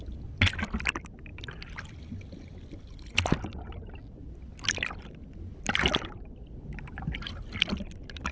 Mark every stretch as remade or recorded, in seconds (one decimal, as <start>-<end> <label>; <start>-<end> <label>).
0.0-8.3 recorded